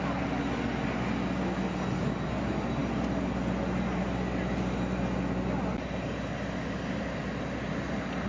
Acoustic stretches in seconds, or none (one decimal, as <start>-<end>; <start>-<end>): 0.0-8.3